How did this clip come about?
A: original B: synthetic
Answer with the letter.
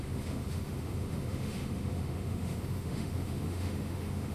B